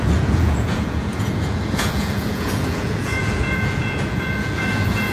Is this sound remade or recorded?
remade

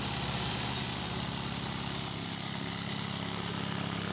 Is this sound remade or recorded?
recorded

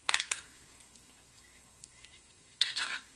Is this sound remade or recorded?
remade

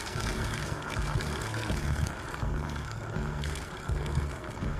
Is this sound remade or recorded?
remade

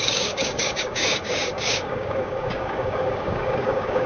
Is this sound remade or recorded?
remade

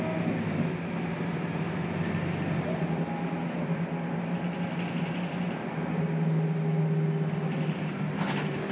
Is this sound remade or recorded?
recorded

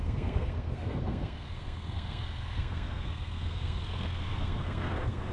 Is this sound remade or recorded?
remade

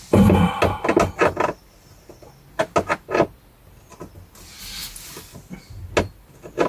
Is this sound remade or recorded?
recorded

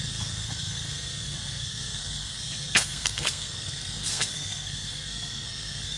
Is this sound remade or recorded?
remade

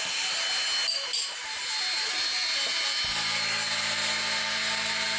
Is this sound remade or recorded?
recorded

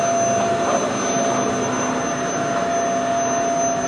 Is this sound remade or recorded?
recorded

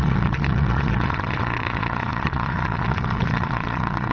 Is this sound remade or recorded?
remade